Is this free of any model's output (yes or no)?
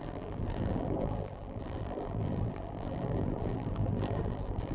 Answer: no